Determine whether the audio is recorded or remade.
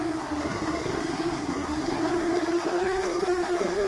remade